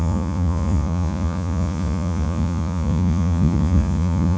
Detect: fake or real fake